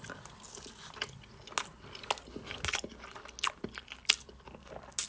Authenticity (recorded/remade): recorded